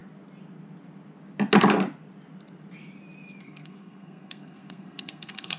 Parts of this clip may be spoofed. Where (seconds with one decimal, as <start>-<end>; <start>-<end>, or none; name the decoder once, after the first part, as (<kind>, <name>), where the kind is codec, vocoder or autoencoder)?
3.4-5.6 (codec, SNAC)